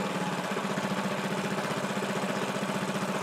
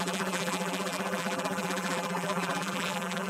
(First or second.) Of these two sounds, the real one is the first